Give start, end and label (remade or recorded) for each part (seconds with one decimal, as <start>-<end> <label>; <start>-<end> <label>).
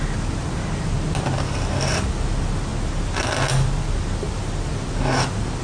0.0-5.6 recorded